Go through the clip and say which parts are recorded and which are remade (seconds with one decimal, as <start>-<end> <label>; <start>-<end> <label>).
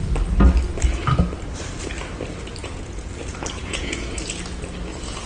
0.0-2.6 recorded; 2.6-3.1 remade; 3.1-3.6 recorded; 3.6-4.2 remade; 4.2-5.3 recorded